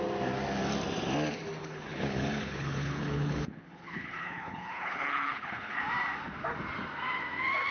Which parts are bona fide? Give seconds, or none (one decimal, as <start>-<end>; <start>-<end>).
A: 0.0-1.6; 5.8-7.7